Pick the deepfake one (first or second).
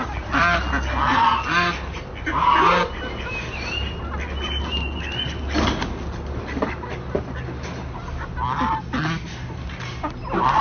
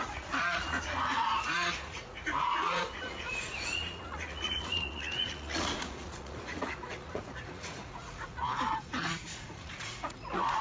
second